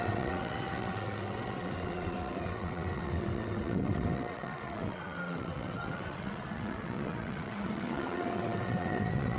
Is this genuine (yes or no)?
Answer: no